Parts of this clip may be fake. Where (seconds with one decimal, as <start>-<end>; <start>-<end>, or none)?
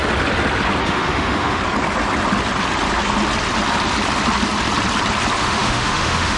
0.8-1.6; 5.4-6.4